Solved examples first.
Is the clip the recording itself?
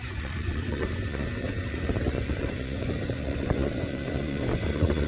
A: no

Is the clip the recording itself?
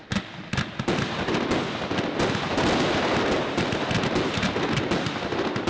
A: yes